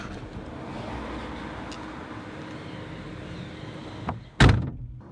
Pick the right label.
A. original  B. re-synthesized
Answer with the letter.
A